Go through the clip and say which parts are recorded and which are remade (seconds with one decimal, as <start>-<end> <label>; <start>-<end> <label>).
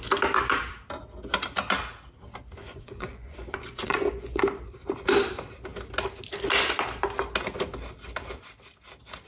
0.0-2.6 recorded; 2.6-4.4 remade; 4.4-9.3 recorded